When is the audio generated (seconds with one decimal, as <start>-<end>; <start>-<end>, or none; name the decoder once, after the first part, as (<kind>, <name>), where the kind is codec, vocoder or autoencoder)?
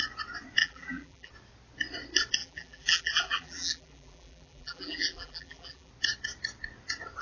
0.6-1.3 (vocoder, BigVGAN v2); 2.4-5.9